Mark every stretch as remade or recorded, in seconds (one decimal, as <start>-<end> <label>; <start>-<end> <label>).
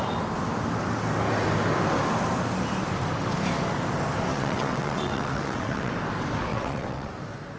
0.0-4.3 recorded; 4.3-5.9 remade; 5.9-6.5 recorded; 6.5-7.1 remade; 7.1-7.6 recorded